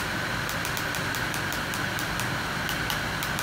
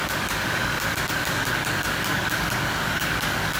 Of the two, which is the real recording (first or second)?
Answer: first